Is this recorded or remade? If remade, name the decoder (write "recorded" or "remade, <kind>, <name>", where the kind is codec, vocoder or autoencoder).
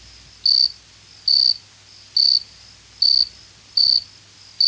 recorded